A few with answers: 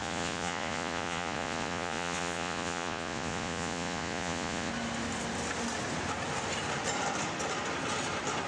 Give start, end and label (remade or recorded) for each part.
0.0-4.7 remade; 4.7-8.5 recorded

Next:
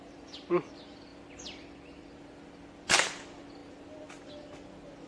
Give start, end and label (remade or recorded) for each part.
0.0-5.1 recorded

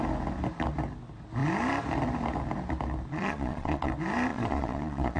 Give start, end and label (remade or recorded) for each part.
0.0-3.1 recorded; 3.1-3.9 remade; 3.9-4.3 recorded; 4.3-5.2 remade

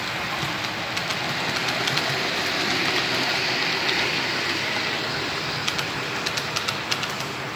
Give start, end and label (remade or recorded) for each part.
0.0-7.6 recorded